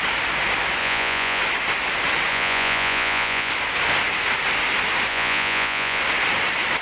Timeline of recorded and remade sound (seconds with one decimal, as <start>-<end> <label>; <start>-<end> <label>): 0.0-0.8 recorded; 0.8-1.4 remade; 1.4-2.3 recorded; 2.3-3.5 remade; 3.5-5.1 recorded; 5.1-6.0 remade; 6.0-6.8 recorded